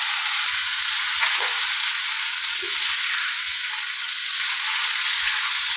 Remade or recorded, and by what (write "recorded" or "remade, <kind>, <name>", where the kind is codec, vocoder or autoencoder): remade, vocoder, Vocos